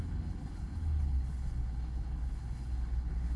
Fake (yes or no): yes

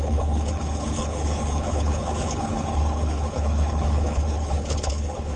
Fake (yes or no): yes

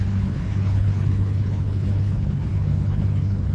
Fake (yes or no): yes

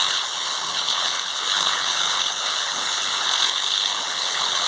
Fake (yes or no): yes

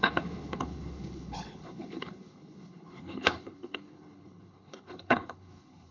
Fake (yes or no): yes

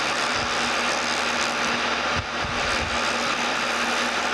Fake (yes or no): no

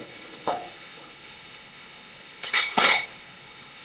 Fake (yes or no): yes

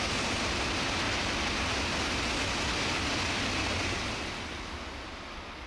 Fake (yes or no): no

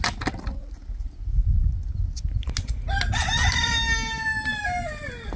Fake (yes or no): no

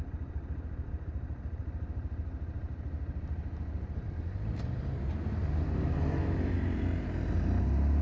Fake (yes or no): no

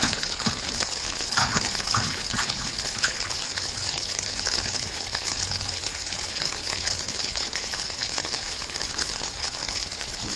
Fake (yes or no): yes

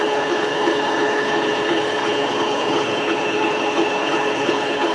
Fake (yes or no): yes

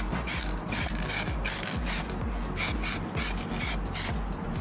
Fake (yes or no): no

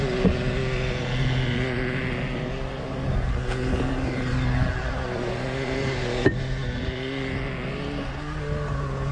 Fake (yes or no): no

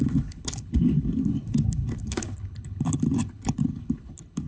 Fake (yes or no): yes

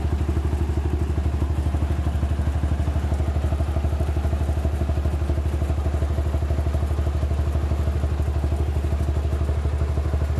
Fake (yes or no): no